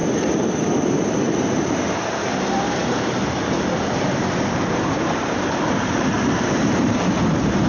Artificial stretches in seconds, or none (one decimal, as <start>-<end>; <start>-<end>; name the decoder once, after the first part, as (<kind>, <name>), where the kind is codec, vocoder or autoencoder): 2.4-7.7 (vocoder, BigVGAN v2)